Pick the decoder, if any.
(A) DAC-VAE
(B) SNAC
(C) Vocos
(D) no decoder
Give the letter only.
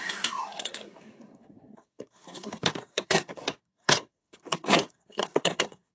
B